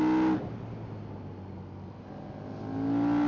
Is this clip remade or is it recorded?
recorded